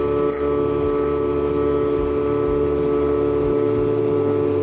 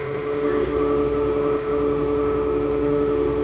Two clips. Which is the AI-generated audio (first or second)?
second